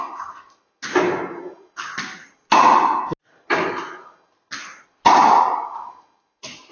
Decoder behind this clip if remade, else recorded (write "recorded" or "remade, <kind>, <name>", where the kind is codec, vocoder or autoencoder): recorded